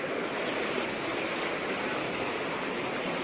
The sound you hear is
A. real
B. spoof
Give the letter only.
A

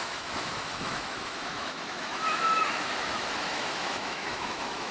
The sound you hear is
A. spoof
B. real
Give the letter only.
A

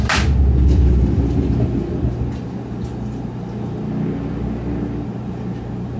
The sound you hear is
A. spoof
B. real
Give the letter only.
B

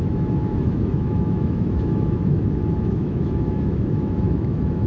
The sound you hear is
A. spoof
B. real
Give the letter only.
A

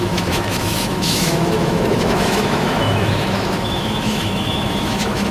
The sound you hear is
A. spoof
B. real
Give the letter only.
A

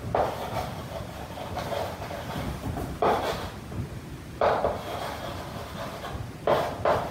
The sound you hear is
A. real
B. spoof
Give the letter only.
A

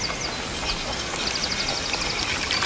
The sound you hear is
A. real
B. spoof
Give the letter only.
A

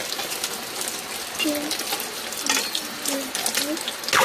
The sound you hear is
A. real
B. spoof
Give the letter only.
A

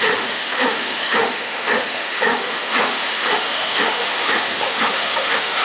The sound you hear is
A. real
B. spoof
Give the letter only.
B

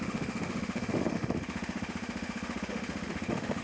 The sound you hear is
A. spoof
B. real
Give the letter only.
A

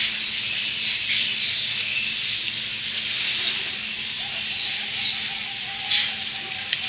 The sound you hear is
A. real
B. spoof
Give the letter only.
A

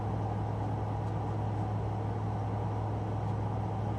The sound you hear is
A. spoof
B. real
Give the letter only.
B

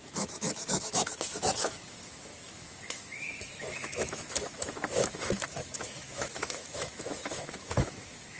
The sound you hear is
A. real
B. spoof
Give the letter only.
B